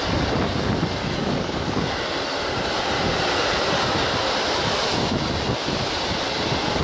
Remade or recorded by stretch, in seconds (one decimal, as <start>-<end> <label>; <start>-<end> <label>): 0.0-1.0 recorded; 1.0-1.9 remade; 1.9-6.8 recorded